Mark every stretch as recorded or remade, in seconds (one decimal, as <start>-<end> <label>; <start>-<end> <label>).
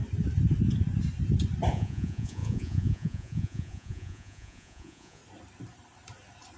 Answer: 0.0-1.7 recorded; 1.7-5.2 remade; 5.2-6.6 recorded